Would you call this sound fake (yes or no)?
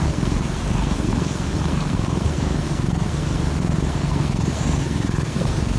yes